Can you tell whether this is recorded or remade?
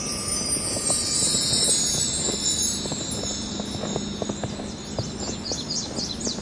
recorded